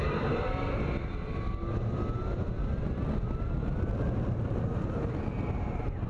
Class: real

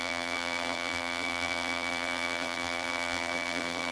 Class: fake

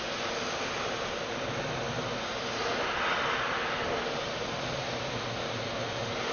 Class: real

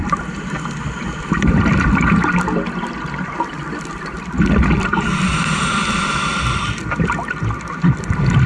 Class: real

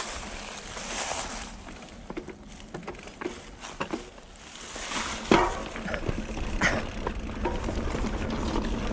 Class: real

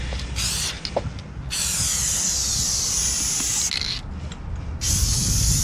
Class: real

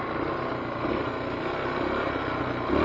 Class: real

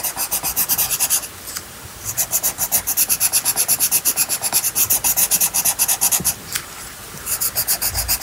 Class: real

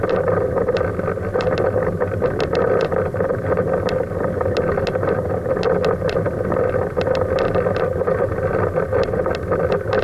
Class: real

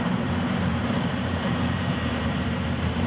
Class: fake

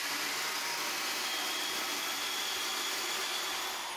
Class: fake